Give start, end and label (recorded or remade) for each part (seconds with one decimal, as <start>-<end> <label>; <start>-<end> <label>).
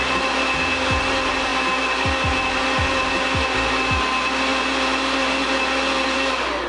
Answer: 0.0-6.7 recorded